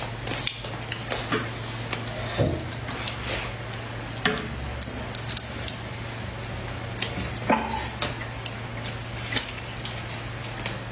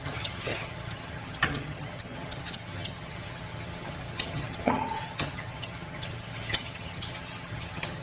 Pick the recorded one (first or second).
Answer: first